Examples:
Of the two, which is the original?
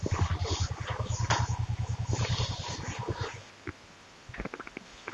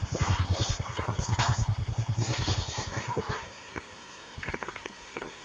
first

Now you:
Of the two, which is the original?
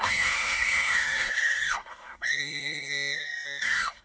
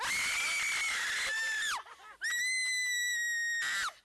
second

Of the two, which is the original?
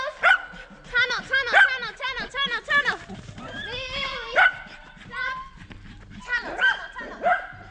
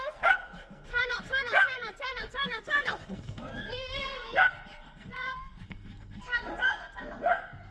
first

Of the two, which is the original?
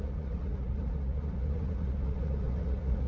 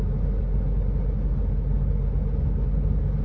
second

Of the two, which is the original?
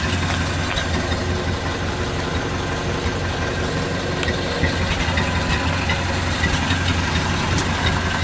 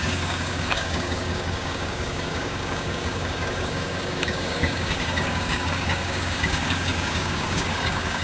first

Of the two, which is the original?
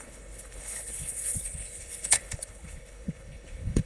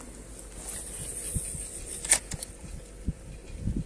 second